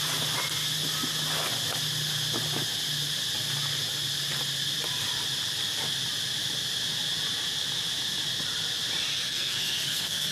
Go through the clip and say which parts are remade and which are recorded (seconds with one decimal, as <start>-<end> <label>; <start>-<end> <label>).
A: 0.0-9.1 recorded; 9.1-10.3 remade